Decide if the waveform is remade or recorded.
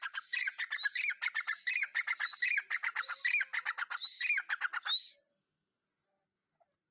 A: recorded